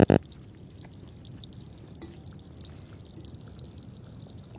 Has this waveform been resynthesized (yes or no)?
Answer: no